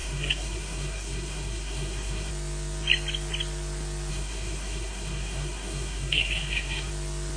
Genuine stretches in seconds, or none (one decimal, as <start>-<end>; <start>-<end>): 2.3-4.1; 6.9-7.4